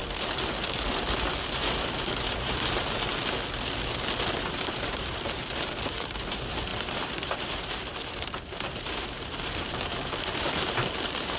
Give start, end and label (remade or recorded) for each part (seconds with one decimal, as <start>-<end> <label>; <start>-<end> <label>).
0.0-2.3 recorded; 2.3-3.1 remade; 3.1-4.4 recorded; 4.4-11.4 remade